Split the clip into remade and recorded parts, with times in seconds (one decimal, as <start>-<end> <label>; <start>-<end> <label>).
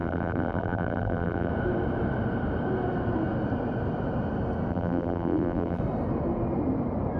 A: 0.0-1.5 remade; 1.5-4.7 recorded; 4.7-5.8 remade; 5.8-7.2 recorded